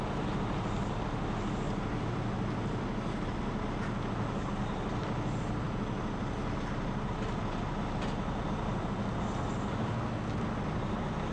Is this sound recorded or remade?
recorded